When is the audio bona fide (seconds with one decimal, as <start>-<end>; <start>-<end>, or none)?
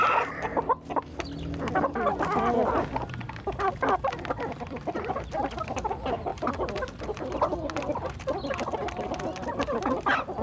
0.0-10.4